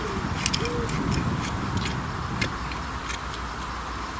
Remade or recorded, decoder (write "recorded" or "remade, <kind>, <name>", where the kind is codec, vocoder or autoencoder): recorded